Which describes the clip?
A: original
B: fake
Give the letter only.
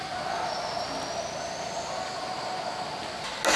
A